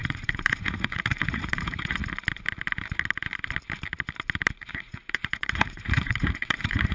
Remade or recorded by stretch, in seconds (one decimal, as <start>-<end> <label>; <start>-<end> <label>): 0.0-2.0 remade; 2.0-4.5 recorded; 4.5-6.9 remade